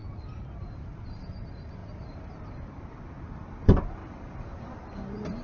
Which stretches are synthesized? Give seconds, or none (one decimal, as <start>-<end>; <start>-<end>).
1.8-3.1; 4.0-4.6